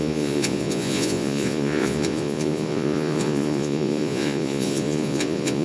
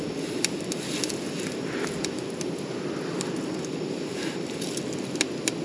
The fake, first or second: first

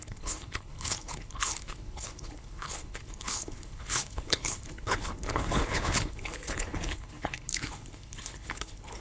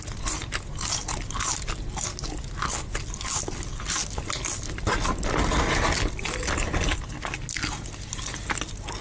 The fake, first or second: first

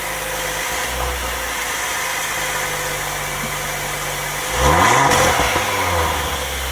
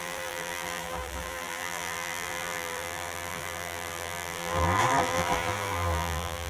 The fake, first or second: second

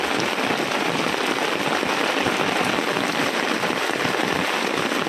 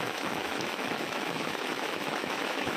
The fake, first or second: second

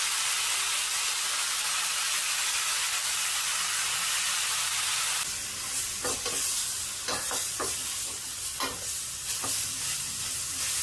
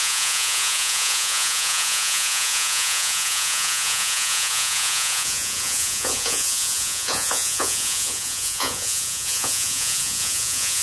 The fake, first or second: second